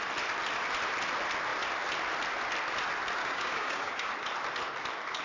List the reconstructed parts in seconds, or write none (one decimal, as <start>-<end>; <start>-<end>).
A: 3.2-4.1